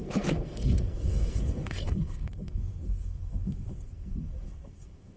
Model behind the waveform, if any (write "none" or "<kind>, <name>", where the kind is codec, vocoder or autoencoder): codec, SNAC